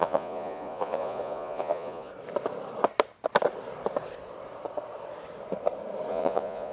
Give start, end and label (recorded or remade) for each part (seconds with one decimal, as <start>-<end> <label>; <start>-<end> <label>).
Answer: 0.0-2.1 remade; 2.1-6.1 recorded; 6.1-6.7 remade